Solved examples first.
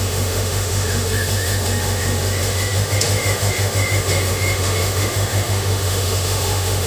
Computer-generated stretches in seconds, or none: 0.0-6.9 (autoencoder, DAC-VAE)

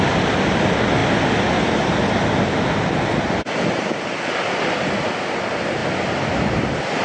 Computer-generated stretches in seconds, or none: none

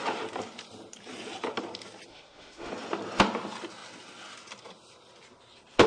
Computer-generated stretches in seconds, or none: 2.1-2.7 (autoencoder, DAC-VAE)

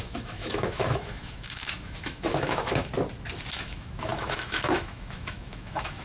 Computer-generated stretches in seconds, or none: 0.0-2.9 (autoencoder, DAC-VAE); 3.5-6.0